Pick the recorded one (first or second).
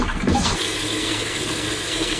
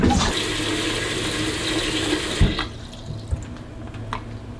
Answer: second